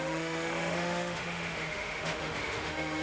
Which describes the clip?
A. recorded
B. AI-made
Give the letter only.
B